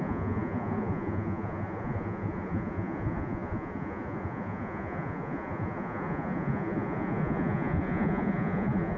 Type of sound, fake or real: fake